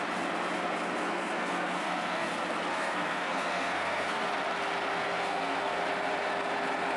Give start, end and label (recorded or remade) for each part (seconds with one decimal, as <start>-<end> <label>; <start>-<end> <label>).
0.0-1.0 recorded; 1.0-2.3 remade; 2.3-2.7 recorded; 2.7-4.3 remade; 4.3-4.9 recorded; 4.9-5.8 remade; 5.8-7.0 recorded